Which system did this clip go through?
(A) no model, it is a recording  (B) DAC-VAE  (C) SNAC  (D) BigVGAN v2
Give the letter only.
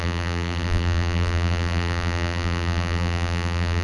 D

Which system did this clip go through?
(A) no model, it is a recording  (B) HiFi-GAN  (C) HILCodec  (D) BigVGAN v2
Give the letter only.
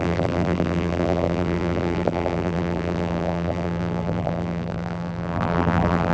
D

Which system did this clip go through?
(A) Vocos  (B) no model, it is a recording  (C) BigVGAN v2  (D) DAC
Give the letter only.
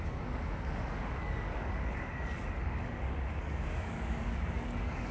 D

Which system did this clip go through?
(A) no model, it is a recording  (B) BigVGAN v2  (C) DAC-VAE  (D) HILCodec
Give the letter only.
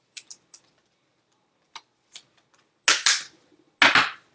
A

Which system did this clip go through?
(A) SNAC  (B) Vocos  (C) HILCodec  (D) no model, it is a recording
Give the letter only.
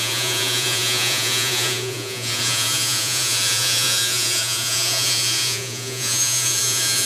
B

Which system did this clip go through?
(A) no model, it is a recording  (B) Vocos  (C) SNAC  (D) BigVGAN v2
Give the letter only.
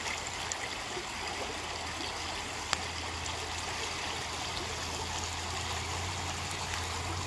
A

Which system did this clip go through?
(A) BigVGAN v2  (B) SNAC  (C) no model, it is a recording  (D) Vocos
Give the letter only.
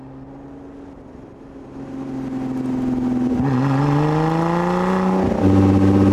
C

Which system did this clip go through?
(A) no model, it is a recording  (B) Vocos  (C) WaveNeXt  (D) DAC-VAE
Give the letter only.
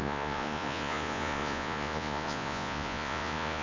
B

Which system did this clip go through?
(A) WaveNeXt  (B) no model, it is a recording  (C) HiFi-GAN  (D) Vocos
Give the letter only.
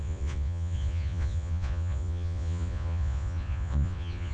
D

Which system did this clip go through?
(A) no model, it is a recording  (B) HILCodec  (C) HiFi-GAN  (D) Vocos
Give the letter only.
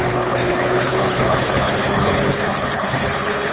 B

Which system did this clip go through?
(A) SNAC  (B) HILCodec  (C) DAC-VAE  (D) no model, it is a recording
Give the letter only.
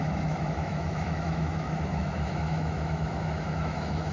C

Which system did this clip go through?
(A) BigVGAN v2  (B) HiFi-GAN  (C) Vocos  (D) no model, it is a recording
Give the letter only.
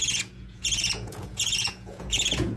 C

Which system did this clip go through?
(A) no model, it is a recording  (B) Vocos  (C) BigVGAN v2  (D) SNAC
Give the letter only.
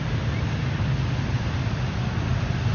A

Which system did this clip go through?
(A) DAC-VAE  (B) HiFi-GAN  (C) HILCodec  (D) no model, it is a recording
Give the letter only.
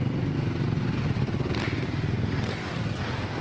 D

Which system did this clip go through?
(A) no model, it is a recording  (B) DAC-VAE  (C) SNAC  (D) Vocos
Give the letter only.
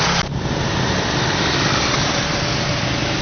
A